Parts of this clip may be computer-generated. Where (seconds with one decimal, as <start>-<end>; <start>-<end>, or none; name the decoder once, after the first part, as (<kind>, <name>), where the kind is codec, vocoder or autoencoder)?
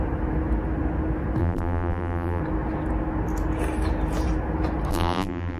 1.4-2.4 (vocoder, BigVGAN v2); 4.9-5.6